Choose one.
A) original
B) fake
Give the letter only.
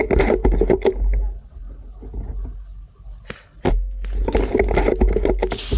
A